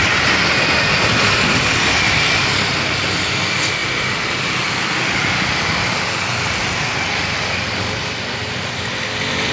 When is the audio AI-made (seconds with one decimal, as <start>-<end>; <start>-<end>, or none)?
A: none